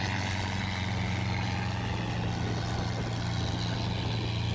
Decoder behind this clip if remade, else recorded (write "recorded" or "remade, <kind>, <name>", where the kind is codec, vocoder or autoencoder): recorded